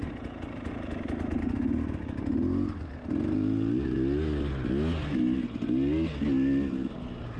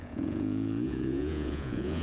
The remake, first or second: second